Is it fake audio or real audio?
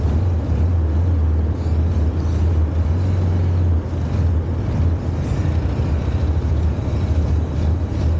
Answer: real